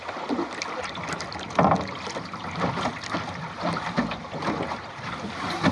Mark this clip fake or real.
real